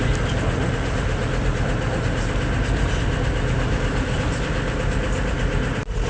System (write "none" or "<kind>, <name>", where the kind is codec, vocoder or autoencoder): none